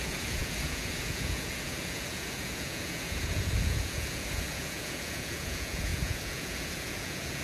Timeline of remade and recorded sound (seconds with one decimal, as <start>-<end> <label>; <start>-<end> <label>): 0.0-7.4 remade